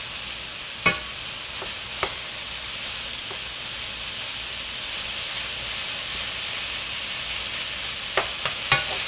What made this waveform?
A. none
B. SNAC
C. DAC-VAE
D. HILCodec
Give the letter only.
A